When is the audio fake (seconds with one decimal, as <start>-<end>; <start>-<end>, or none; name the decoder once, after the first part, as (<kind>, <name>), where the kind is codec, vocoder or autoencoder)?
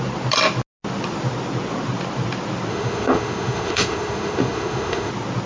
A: 2.7-5.1 (autoencoder, DAC-VAE)